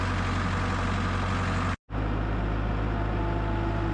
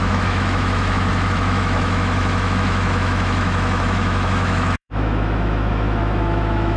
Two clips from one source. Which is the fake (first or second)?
second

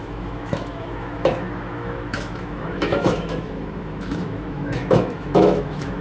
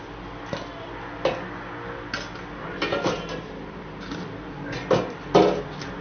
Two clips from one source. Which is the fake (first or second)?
first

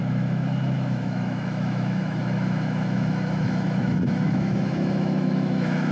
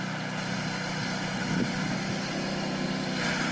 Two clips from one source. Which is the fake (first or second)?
first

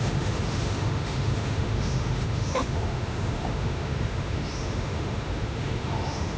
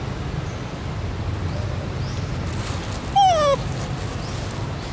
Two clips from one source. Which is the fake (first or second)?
first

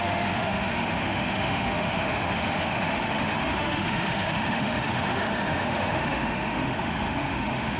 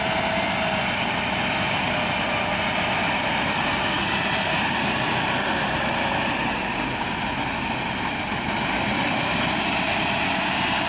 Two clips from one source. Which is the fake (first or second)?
first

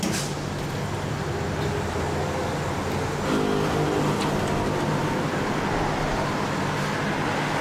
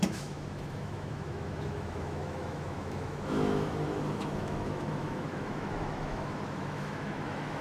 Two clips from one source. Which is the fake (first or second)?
second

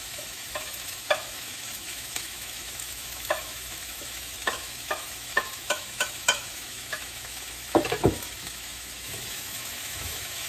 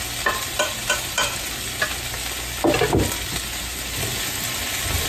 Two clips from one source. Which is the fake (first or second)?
first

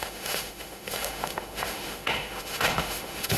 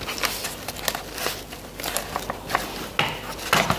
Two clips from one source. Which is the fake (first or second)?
first